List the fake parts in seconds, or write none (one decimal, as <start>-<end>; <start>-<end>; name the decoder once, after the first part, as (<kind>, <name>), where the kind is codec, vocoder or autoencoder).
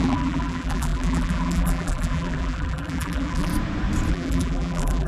0.0-3.5 (vocoder, BigVGAN v2); 4.1-5.1